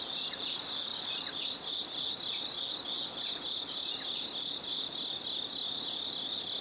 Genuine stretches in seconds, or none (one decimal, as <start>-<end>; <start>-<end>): 0.0-0.9; 3.4-6.6

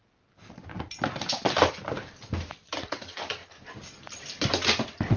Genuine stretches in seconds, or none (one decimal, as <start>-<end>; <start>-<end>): 0.6-1.7

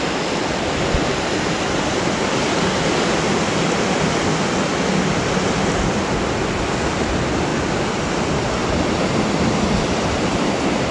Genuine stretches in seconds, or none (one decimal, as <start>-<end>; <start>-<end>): 0.0-8.6

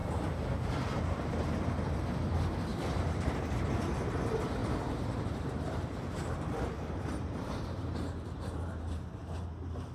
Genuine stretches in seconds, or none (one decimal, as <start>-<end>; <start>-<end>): 1.3-2.7; 3.4-4.6; 9.2-9.9

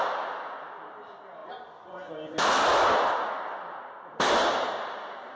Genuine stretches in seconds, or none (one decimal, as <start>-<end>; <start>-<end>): 0.0-5.4

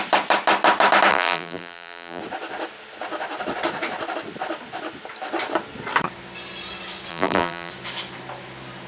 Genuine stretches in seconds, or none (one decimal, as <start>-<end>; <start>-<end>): 0.0-1.1; 2.2-7.1; 7.7-8.9